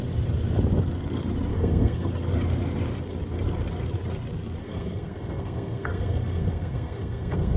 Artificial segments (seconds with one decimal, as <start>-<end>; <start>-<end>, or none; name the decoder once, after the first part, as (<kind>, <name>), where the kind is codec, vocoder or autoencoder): 1.5-2.1 (codec, SNAC); 4.6-7.6